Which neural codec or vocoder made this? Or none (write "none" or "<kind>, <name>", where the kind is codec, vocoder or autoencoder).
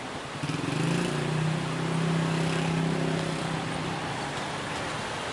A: none